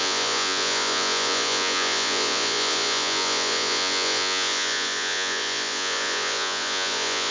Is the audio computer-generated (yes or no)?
yes